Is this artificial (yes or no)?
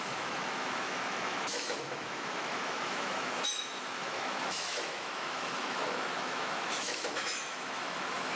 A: yes